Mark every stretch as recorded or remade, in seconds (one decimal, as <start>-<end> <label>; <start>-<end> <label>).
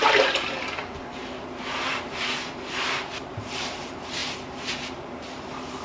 0.0-4.2 remade; 4.2-4.7 recorded; 4.7-5.8 remade